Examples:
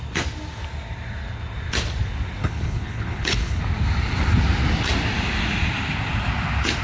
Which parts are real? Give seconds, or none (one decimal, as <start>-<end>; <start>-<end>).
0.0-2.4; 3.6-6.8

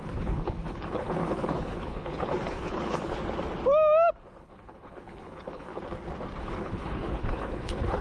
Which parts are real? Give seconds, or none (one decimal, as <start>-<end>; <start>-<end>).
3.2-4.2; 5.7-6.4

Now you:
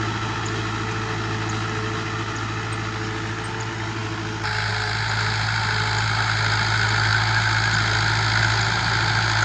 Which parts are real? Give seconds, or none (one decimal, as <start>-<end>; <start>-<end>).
0.0-9.4

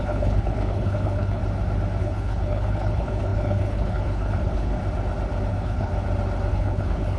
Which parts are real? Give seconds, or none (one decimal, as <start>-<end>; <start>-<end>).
1.4-2.0; 4.8-5.5; 5.9-6.5